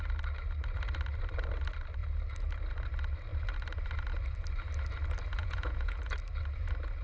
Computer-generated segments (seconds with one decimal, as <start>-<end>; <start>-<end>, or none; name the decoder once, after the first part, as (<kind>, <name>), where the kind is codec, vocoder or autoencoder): 5.4-6.1 (vocoder, Vocos)